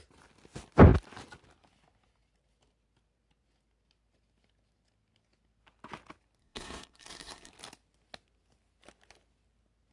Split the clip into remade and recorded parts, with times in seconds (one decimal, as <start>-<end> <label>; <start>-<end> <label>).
0.0-6.4 recorded; 6.4-7.5 remade; 7.5-9.9 recorded